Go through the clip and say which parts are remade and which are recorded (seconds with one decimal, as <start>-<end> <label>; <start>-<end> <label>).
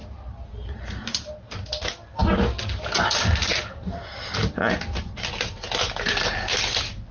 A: 0.0-1.3 remade; 1.3-3.4 recorded; 3.4-4.2 remade; 4.2-7.1 recorded